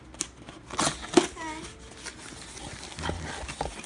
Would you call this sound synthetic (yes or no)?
no